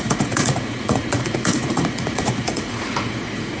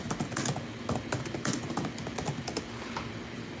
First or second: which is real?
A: second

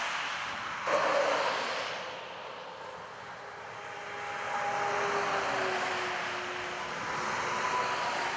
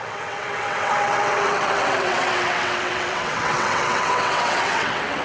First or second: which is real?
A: first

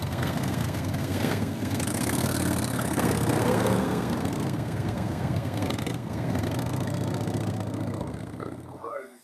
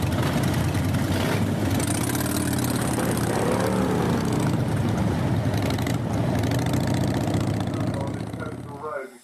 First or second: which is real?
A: second